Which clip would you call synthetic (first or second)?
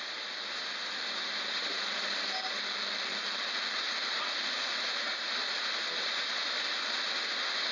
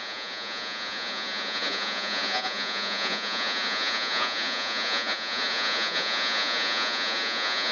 second